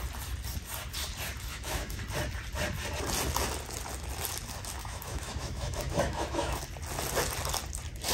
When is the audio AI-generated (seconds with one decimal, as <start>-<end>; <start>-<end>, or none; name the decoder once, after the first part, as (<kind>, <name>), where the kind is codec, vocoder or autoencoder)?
1.5-2.0 (autoencoder, DAC-VAE); 4.8-6.6